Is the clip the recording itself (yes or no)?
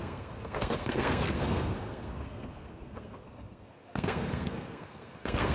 no